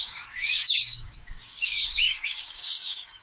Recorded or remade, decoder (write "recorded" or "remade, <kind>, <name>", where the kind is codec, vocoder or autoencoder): remade, codec, DAC